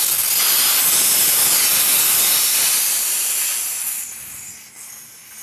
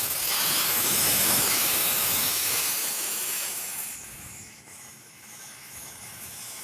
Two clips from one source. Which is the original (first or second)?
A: first